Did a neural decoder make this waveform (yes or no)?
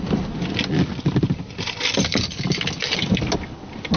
no